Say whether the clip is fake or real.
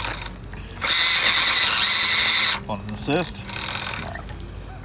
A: real